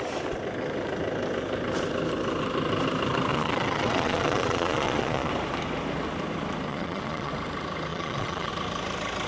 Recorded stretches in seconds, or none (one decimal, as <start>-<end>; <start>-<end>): 0.0-3.3; 5.3-6.7; 7.3-7.9; 8.5-9.3